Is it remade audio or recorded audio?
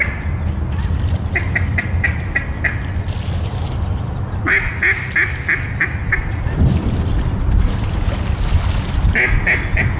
recorded